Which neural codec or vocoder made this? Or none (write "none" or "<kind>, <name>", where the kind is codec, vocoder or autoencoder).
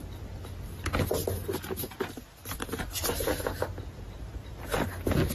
none